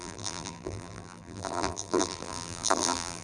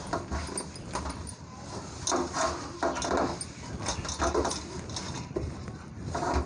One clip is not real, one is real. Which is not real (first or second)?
first